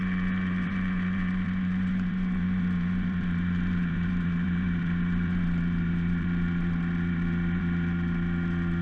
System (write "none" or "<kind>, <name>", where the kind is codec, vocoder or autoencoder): vocoder, BigVGAN v2